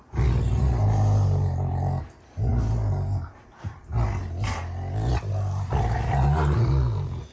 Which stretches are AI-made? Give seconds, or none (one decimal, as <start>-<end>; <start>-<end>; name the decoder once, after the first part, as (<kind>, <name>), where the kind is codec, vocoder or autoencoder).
none